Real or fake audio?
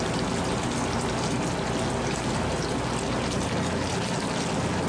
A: real